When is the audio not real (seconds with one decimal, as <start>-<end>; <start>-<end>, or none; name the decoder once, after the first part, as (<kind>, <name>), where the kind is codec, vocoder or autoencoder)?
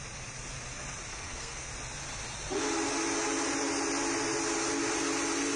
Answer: 1.1-1.7 (codec, SNAC)